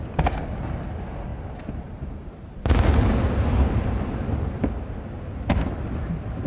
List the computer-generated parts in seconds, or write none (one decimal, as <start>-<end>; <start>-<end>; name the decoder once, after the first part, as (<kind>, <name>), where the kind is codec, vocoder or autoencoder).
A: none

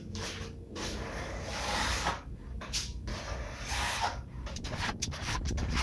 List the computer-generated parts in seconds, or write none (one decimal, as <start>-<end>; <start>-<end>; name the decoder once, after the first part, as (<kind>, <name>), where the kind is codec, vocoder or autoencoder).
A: 0.0-3.1 (codec, DAC); 3.7-5.8

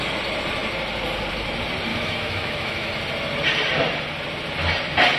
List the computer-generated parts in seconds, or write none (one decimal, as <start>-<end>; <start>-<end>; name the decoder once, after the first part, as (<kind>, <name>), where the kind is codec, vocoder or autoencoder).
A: 1.9-2.9 (autoencoder, DAC-VAE)

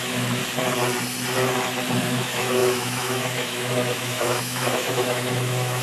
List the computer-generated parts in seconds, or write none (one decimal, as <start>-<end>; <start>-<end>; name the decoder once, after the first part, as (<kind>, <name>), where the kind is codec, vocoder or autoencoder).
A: 0.0-0.4 (autoencoder, DAC-VAE); 2.0-5.8